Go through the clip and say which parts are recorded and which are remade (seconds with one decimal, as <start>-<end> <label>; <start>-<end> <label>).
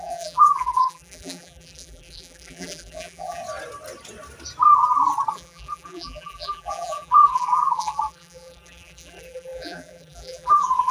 0.0-3.4 remade; 3.4-5.3 recorded; 5.3-10.9 remade